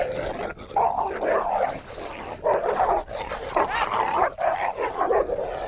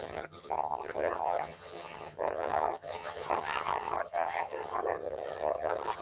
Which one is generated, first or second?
second